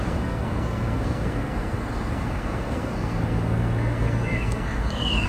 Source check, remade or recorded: remade